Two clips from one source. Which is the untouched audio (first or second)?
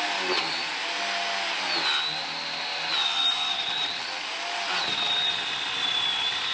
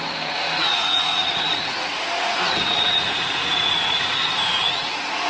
first